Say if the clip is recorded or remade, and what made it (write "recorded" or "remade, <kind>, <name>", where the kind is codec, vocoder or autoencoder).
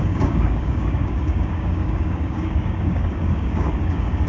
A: remade, codec, DAC